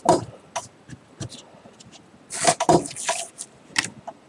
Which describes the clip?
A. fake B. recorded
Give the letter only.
B